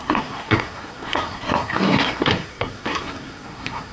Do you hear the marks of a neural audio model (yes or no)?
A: yes